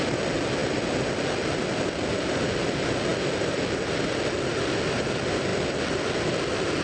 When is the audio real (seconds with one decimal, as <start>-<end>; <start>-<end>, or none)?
0.0-5.5; 6.1-6.8